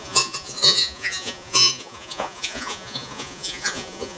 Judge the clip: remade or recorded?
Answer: remade